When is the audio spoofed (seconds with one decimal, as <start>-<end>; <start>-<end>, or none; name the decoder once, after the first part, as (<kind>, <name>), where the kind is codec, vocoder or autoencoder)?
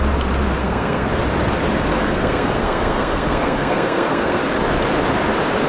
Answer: 0.6-1.1 (codec, SNAC); 1.9-4.4